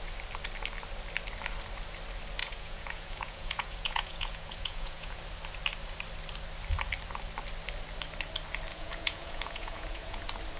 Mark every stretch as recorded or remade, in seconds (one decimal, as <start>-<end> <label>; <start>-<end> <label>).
0.0-2.4 recorded; 2.4-5.2 remade; 5.2-8.7 recorded; 8.7-10.2 remade; 10.2-10.6 recorded